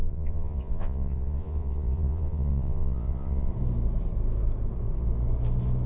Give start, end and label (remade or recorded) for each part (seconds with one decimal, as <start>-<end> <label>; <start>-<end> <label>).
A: 0.0-3.5 remade; 3.5-5.9 recorded

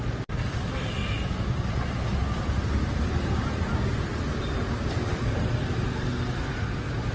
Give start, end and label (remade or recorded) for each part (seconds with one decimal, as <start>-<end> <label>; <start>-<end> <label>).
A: 0.0-7.1 recorded

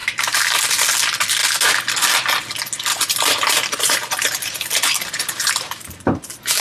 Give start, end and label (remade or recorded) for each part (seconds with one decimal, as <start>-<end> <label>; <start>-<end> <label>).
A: 0.0-0.6 remade; 0.6-2.9 recorded; 2.9-6.6 remade

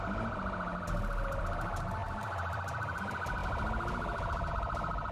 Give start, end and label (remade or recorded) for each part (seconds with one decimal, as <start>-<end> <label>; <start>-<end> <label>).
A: 0.0-5.1 recorded

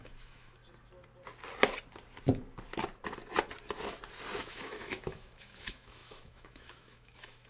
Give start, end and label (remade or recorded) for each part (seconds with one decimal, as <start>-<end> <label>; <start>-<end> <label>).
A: 0.0-0.6 remade; 0.6-4.4 recorded; 4.4-7.5 remade

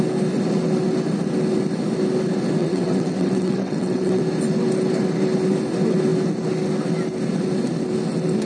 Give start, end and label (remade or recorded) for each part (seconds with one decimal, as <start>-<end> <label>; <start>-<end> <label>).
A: 0.0-2.6 recorded; 2.6-4.2 remade; 4.2-8.5 recorded